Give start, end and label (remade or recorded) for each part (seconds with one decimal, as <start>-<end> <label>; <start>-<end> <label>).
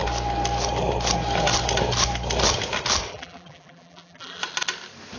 0.0-3.1 recorded; 3.1-4.4 remade; 4.4-5.2 recorded